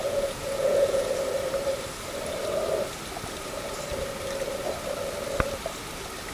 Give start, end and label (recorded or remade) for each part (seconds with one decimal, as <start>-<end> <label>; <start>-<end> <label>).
0.0-1.1 remade; 1.1-6.3 recorded